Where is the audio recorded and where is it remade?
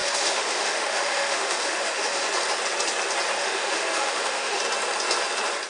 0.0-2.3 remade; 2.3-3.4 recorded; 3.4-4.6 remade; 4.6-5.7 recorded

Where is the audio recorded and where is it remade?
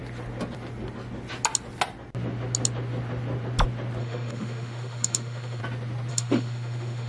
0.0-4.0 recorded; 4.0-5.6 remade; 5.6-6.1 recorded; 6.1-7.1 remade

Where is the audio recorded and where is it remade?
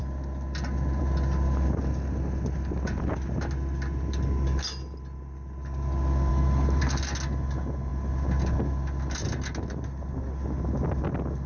0.0-6.3 recorded; 6.3-6.8 remade; 6.8-11.5 recorded